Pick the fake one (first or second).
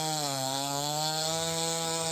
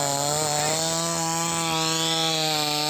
first